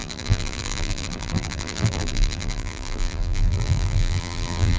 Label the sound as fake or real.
fake